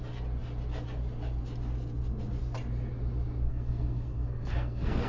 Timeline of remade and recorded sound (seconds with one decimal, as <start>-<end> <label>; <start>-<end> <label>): 0.0-3.5 recorded; 3.5-5.1 remade